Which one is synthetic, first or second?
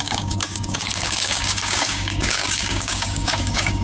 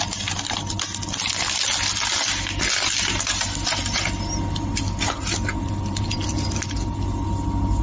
first